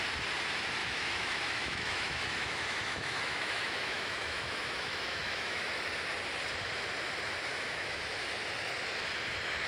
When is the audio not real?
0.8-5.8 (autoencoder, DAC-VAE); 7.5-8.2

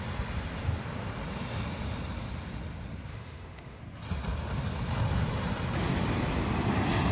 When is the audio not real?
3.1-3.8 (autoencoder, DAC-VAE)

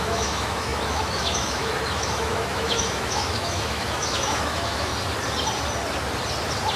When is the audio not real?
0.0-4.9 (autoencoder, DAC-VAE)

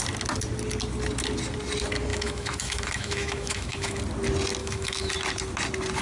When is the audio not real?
2.1-4.0 (autoencoder, DAC-VAE); 4.6-5.1

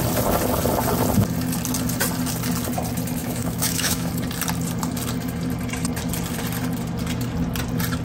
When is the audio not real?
3.2-4.1 (autoencoder, DAC-VAE)

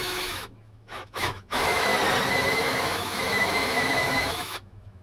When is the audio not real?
0.0-1.9 (autoencoder, DAC-VAE); 2.5-5.0

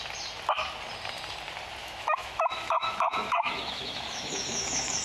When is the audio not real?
1.8-5.0 (autoencoder, DAC-VAE)

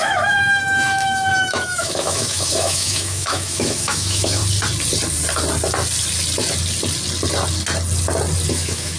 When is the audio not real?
0.0-4.4 (autoencoder, DAC-VAE); 8.5-9.0